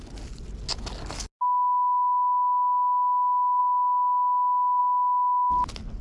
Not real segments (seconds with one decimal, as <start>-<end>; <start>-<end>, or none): none